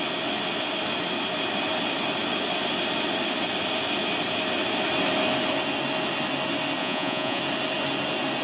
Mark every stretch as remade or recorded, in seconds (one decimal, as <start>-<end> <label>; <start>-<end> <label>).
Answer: 0.0-6.8 recorded; 6.8-7.4 remade; 7.4-8.4 recorded